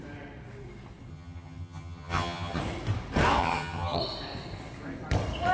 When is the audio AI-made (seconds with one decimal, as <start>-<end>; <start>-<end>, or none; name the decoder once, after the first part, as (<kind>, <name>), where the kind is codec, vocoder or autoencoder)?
1.1-2.6 (vocoder, HiFi-GAN); 3.4-4.0